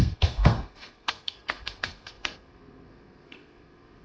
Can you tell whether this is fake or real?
fake